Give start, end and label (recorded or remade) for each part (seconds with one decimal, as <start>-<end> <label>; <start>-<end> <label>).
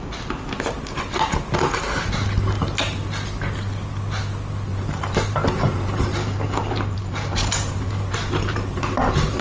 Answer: 0.0-4.7 recorded; 4.7-9.4 remade